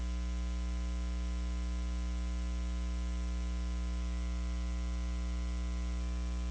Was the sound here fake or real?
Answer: real